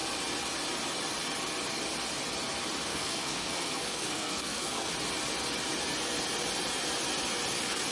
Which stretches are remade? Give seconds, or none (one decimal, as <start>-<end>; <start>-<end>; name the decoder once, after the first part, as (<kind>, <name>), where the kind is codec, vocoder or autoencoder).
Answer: 2.9-4.9 (codec, SNAC)